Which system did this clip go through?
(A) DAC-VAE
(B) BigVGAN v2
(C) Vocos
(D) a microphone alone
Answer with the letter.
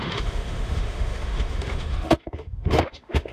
A